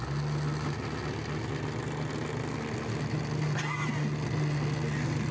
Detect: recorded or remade recorded